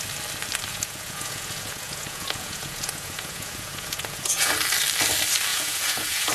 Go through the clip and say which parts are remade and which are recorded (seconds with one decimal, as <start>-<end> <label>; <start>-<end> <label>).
0.0-0.7 recorded; 0.7-4.5 remade; 4.5-5.5 recorded; 5.5-6.3 remade